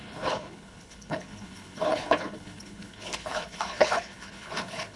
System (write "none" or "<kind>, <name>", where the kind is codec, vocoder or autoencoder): codec, HILCodec